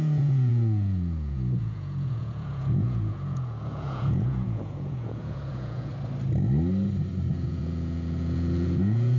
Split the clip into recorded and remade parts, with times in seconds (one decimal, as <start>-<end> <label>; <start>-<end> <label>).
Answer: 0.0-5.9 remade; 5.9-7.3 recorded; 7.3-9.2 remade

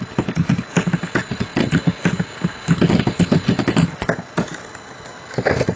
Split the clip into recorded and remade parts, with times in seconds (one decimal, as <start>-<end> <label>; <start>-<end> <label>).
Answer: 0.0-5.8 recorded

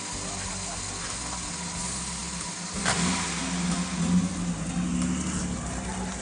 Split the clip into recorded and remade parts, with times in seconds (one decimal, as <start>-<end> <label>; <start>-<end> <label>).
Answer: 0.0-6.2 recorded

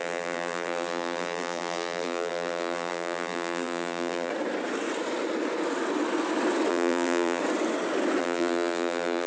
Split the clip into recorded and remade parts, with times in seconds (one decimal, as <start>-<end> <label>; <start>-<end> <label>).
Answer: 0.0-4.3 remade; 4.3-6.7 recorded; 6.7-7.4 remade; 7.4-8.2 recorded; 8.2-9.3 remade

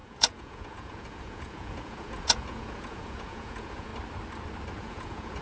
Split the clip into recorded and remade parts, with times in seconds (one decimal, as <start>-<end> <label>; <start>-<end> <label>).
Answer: 0.0-3.9 remade; 3.9-4.7 recorded; 4.7-5.4 remade

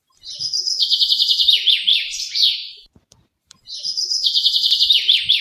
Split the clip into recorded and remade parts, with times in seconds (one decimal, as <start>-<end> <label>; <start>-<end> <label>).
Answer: 0.0-1.9 recorded; 1.9-5.4 remade